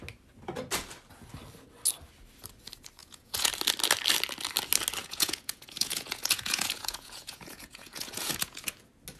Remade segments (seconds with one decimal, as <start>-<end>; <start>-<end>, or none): 3.0-3.5; 5.0-8.7